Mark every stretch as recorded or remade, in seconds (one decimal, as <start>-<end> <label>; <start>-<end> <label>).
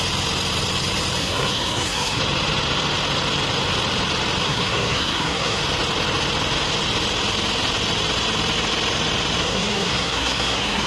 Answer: 0.0-1.2 recorded; 1.2-2.2 remade; 2.2-4.4 recorded; 4.4-5.6 remade; 5.6-9.4 recorded; 9.4-10.9 remade